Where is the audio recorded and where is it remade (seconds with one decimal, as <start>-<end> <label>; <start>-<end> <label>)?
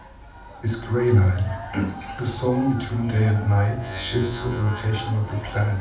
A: 0.0-3.8 recorded; 3.8-4.8 remade; 4.8-5.8 recorded